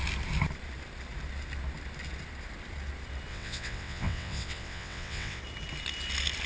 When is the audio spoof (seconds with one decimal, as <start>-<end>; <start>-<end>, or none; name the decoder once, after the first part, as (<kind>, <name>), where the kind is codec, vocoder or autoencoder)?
3.3-5.4 (vocoder, WaveNeXt)